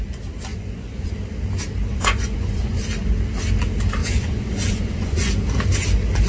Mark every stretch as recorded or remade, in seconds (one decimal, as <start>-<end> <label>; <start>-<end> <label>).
0.0-0.5 recorded; 0.5-1.1 remade; 1.1-1.9 recorded; 1.9-2.8 remade; 2.8-4.0 recorded; 4.0-5.3 remade; 5.3-6.3 recorded